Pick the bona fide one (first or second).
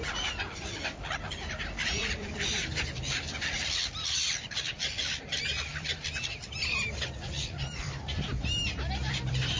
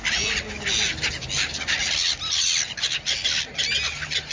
second